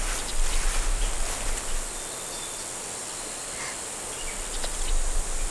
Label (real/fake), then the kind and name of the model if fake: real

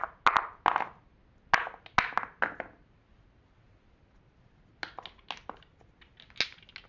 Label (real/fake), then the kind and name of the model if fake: real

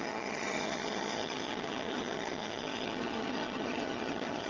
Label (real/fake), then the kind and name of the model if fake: fake, vocoder, HiFi-GAN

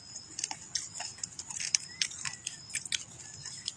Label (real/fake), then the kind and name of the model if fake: real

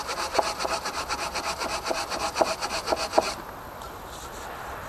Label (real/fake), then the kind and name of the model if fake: real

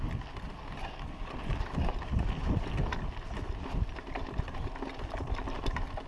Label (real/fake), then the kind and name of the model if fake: real